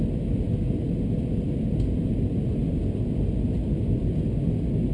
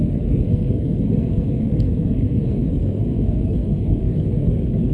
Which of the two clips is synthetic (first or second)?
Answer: second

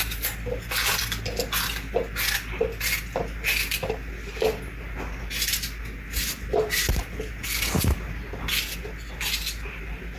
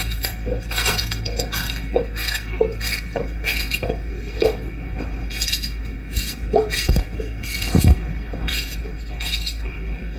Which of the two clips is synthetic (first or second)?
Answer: second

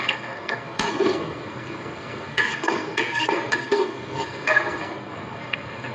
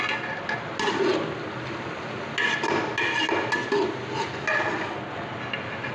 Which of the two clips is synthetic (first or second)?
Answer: first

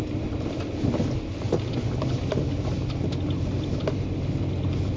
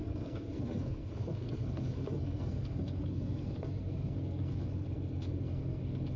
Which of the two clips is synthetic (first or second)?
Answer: second